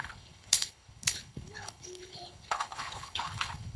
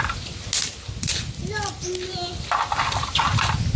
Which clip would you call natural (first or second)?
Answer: second